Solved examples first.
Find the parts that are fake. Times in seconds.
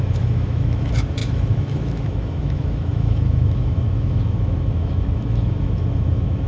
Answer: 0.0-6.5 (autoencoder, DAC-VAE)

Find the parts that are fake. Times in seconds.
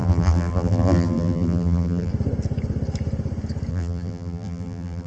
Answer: 0.0-2.1 (vocoder, BigVGAN v2); 3.7-5.1